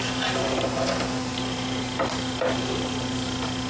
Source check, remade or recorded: recorded